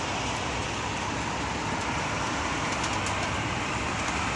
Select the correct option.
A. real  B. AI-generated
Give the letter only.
B